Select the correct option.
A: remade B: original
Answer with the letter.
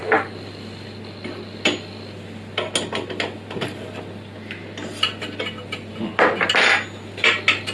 B